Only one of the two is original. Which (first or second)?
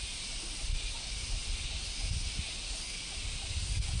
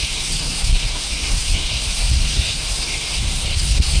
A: first